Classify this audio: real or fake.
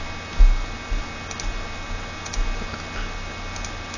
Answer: real